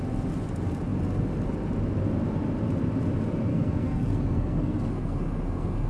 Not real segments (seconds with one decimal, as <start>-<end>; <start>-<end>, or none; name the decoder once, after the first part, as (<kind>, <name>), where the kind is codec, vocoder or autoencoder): 3.5-5.9 (codec, SNAC)